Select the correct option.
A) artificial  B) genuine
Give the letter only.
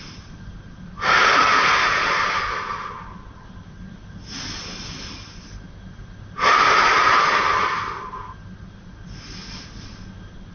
B